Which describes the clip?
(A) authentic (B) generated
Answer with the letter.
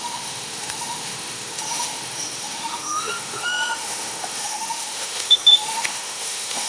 B